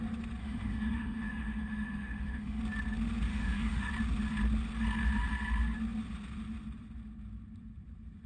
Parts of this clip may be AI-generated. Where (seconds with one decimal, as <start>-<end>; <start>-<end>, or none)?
0.4-2.6; 3.3-3.9